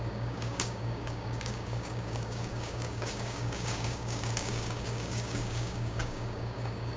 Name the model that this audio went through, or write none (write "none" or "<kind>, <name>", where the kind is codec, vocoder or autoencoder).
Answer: codec, DAC